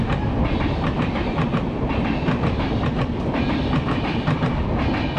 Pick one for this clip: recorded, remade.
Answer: recorded